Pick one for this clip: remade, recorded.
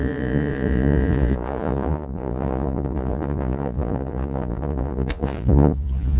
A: remade